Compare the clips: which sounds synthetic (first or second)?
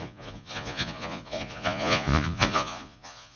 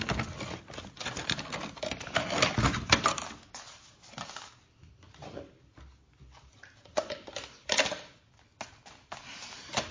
first